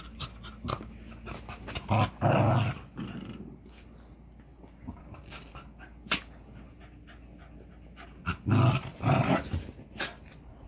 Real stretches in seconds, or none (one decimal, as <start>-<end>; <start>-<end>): 0.0-10.7